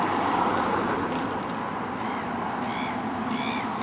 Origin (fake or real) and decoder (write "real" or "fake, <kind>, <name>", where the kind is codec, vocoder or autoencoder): real